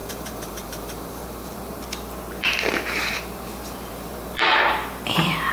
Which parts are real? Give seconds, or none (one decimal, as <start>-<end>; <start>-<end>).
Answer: 1.8-2.4; 4.7-5.5